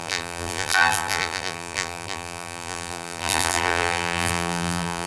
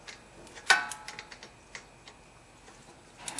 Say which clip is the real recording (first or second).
second